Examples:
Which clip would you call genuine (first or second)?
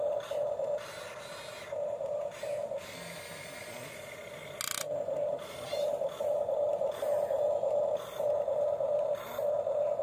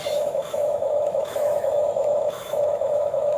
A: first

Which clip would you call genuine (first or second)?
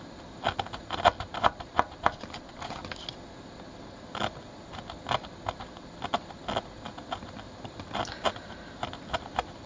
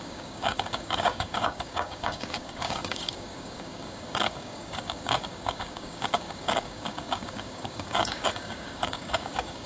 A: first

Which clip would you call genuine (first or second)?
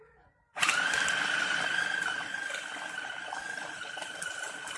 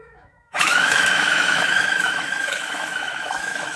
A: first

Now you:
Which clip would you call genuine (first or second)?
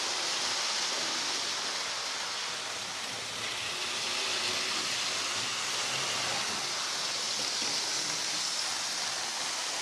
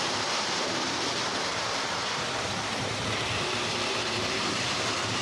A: first